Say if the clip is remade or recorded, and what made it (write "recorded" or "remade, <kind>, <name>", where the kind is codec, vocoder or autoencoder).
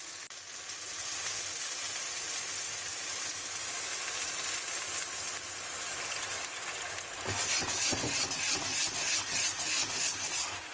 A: recorded